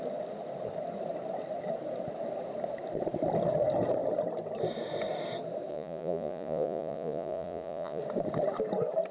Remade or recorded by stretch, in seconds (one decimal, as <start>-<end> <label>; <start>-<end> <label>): 0.0-5.7 recorded; 5.7-8.0 remade; 8.0-9.1 recorded